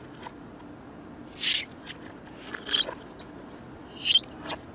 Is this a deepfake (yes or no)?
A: no